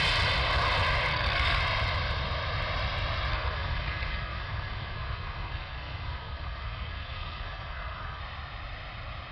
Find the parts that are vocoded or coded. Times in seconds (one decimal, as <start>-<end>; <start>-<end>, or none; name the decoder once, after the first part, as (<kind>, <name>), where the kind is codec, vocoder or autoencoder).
1.1-1.6 (codec, SNAC); 3.3-8.2